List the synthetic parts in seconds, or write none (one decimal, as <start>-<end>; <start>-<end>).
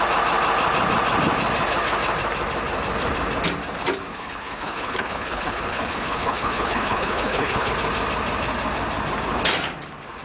4.1-7.7